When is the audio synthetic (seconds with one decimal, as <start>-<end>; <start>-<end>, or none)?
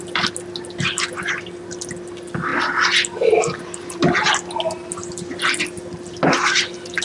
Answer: none